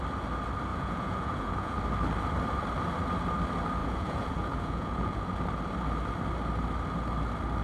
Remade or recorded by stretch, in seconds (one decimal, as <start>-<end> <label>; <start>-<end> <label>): 0.0-0.7 recorded; 0.7-1.8 remade; 1.8-3.8 recorded; 3.8-5.2 remade; 5.2-7.6 recorded